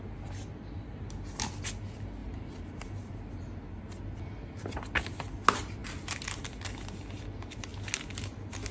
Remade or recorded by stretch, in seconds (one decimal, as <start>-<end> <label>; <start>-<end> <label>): 0.0-2.2 recorded; 2.2-3.1 remade; 3.1-8.7 recorded